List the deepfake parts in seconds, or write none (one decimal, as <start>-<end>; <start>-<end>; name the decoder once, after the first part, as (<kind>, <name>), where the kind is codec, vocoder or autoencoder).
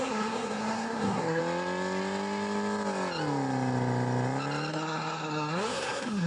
0.0-1.4 (codec, SNAC); 4.7-6.3